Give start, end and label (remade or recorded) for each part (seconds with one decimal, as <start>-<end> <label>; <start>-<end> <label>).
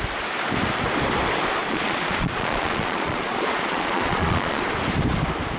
0.0-1.6 recorded; 1.6-4.6 remade; 4.6-5.6 recorded